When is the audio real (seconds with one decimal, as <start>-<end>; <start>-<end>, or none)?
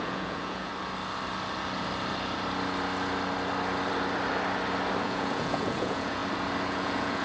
0.7-5.0; 6.2-6.7